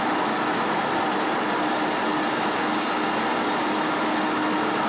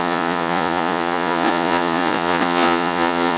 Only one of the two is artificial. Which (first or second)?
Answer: second